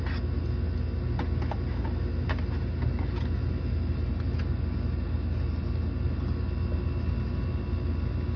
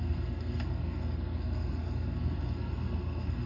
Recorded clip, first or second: first